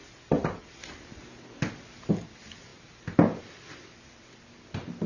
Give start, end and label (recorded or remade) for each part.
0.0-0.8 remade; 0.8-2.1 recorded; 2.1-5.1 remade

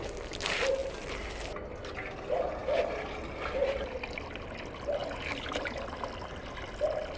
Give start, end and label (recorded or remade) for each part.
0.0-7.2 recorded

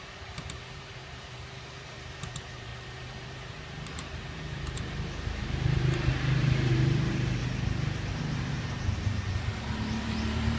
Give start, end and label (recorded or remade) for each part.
0.0-7.4 remade; 7.4-8.5 recorded; 8.5-10.6 remade

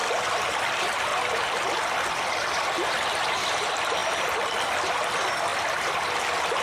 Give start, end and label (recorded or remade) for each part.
0.0-0.6 recorded; 0.6-1.1 remade; 1.1-3.3 recorded; 3.3-4.0 remade; 4.0-4.7 recorded; 4.7-6.6 remade